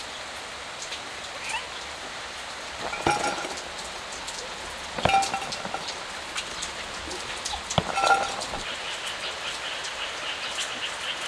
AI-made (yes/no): no